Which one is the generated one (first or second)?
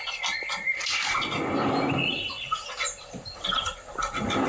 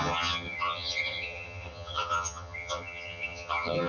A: second